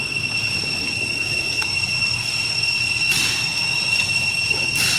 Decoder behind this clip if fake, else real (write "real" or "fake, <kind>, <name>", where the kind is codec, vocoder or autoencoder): real